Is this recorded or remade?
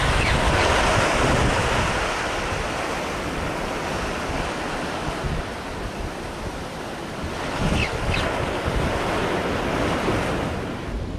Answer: recorded